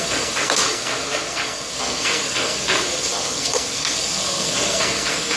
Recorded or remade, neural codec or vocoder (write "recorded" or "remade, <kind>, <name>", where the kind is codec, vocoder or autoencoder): remade, codec, SNAC